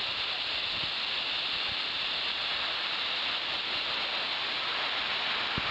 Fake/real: real